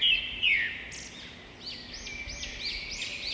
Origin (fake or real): real